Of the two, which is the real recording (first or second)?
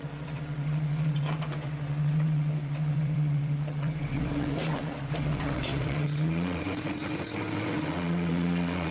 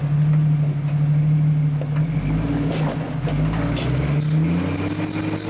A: second